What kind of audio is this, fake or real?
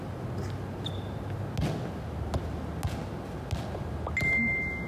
real